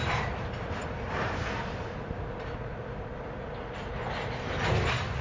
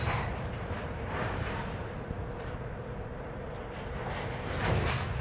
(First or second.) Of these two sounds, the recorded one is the first